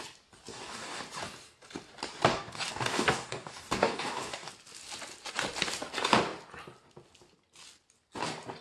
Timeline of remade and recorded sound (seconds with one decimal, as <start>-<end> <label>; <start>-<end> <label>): 0.0-0.5 recorded; 0.5-1.0 remade; 1.0-2.3 recorded; 2.3-4.5 remade; 4.5-8.6 recorded